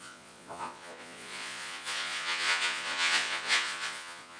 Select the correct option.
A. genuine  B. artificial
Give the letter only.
B